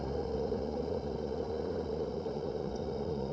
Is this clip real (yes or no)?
no